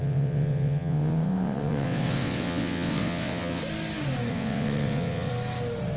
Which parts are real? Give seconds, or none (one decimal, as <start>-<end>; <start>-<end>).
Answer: 3.6-4.3; 5.3-6.0